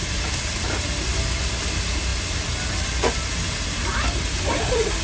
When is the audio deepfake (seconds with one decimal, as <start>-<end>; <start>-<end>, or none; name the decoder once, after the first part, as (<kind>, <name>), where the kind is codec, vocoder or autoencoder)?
none